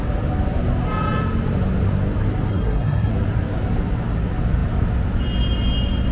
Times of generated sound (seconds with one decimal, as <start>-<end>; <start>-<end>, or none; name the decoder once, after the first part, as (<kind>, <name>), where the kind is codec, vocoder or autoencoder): 2.5-3.1 (codec, SNAC)